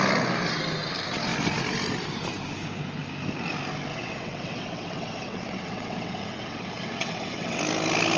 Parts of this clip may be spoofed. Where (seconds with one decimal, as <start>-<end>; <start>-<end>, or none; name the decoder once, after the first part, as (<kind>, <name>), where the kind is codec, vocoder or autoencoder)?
3.9-7.6 (vocoder, WaveNeXt)